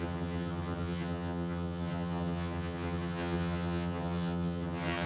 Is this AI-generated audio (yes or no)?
yes